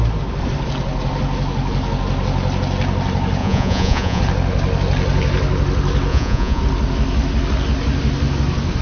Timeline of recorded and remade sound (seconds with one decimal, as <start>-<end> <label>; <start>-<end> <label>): 0.0-3.4 recorded; 3.4-4.2 remade; 4.2-6.1 recorded; 6.1-6.6 remade; 6.6-8.8 recorded